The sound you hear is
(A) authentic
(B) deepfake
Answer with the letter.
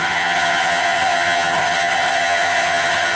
B